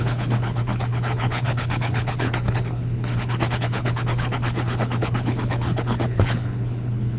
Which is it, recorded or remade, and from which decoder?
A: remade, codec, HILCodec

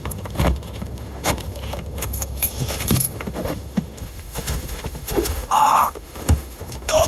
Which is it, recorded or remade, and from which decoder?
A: remade, autoencoder, DAC-VAE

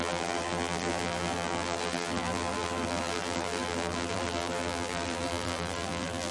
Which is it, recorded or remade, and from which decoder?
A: remade, vocoder, BigVGAN v2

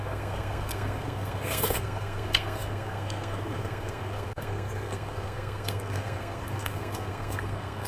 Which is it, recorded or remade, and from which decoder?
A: remade, codec, SNAC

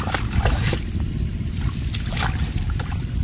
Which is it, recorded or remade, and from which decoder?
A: recorded